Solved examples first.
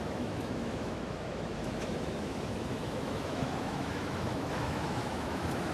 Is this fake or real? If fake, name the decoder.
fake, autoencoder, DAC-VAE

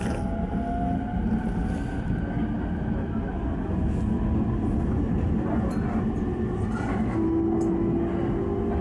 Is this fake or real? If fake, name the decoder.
real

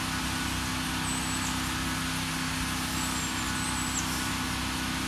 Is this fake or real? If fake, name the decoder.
real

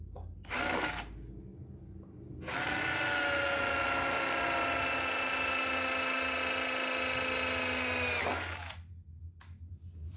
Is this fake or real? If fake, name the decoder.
real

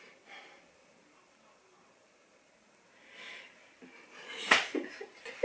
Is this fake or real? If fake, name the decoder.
real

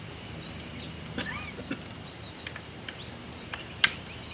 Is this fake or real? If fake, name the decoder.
real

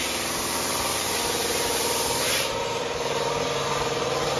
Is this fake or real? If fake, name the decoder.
fake, vocoder, BigVGAN v2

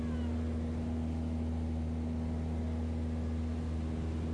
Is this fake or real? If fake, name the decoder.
real